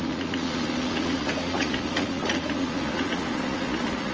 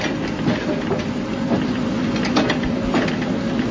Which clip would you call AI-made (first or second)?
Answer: first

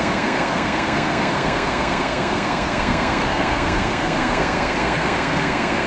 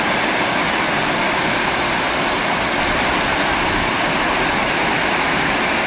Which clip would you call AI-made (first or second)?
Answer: first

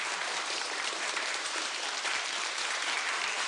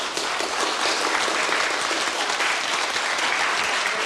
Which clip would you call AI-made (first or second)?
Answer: first